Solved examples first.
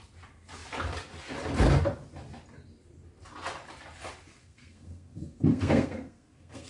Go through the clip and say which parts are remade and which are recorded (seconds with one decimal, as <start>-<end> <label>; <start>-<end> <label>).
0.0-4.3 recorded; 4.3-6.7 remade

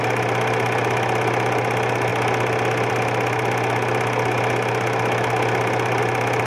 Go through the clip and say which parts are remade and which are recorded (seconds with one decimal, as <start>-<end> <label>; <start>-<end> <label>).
0.0-6.5 recorded

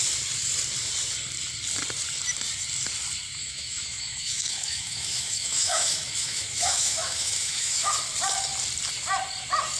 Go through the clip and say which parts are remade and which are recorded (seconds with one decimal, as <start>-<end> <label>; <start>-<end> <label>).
0.0-3.4 recorded; 3.4-7.9 remade; 7.9-9.8 recorded

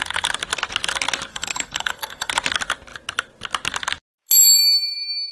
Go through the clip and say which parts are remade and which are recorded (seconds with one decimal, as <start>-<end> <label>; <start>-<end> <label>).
0.0-1.3 recorded; 1.3-2.3 remade; 2.3-5.3 recorded

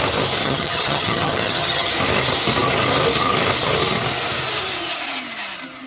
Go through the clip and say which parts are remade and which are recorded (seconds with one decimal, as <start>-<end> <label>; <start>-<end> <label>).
0.0-0.4 recorded; 0.4-1.9 remade; 1.9-5.9 recorded

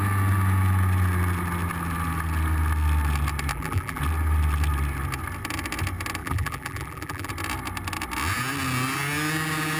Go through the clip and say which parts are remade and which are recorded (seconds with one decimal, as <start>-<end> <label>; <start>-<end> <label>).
0.0-3.5 recorded; 3.5-4.0 remade; 4.0-6.2 recorded; 6.2-7.3 remade; 7.3-9.8 recorded